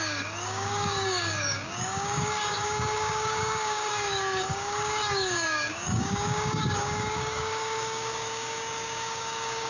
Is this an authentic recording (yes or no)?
no